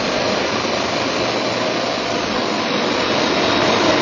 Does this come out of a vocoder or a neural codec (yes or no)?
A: no